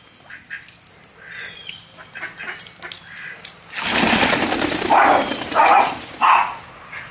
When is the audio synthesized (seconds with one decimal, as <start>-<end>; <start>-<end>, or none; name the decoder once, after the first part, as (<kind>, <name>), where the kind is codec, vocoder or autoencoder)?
none